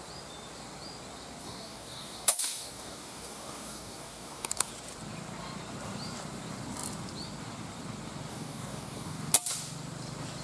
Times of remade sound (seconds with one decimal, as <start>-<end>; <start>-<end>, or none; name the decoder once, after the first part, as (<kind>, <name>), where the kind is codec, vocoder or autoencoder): 1.4-4.7 (codec, DAC); 8.3-9.3